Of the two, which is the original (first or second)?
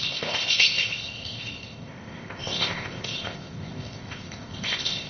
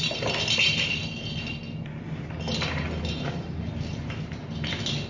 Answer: second